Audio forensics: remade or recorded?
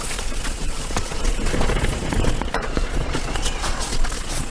remade